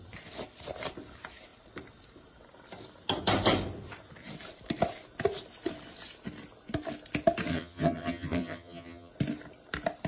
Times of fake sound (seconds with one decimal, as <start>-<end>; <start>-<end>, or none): 7.5-9.1